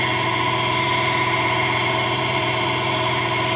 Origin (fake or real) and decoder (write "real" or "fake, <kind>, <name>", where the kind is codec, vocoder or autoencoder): fake, vocoder, BigVGAN v2